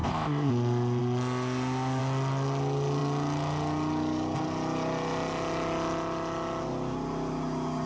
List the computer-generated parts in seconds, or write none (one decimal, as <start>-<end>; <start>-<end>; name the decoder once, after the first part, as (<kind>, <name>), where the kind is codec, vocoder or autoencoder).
0.0-0.5 (codec, ZipCodec)